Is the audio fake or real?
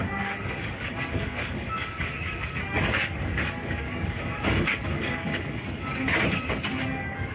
fake